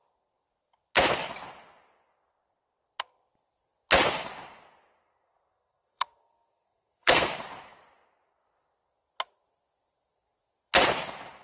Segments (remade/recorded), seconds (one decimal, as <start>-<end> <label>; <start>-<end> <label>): 0.0-5.0 recorded; 5.0-7.3 remade; 7.3-11.4 recorded